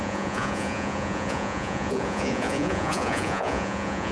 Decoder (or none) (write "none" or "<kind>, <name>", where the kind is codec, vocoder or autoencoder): vocoder, Vocos